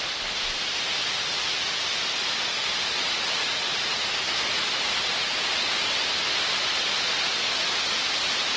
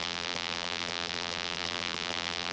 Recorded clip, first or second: first